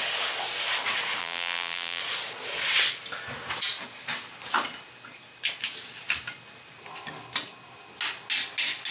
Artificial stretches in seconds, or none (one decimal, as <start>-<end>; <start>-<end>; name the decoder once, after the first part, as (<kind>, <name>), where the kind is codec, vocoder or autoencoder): 1.2-2.0 (vocoder, BigVGAN v2)